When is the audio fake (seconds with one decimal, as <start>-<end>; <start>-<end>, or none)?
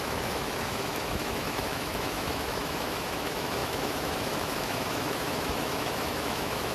0.0-6.7